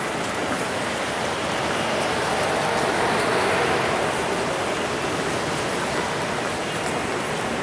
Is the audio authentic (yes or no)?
yes